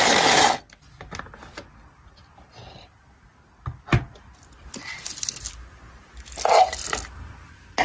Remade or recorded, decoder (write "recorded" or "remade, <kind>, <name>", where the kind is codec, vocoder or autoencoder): recorded